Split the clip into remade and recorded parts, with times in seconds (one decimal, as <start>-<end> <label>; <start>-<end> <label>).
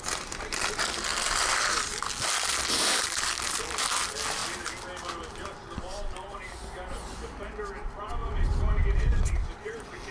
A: 0.0-1.1 remade; 1.1-2.8 recorded; 2.8-4.4 remade; 4.4-5.2 recorded; 5.2-8.2 remade; 8.2-8.9 recorded; 8.9-10.1 remade